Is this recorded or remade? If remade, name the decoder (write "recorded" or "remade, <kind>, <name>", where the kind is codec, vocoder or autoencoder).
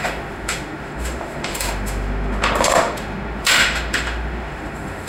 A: remade, autoencoder, DAC-VAE